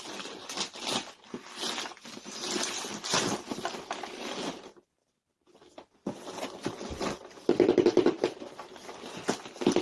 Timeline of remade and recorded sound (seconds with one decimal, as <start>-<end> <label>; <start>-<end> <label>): 0.0-9.8 recorded